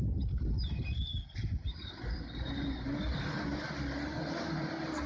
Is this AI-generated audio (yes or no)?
no